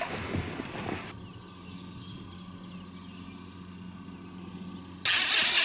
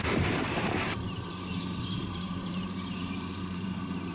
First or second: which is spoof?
second